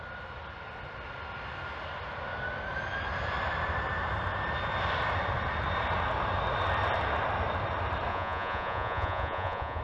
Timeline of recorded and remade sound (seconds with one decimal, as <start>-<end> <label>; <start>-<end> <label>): 0.0-8.1 recorded; 8.1-9.8 remade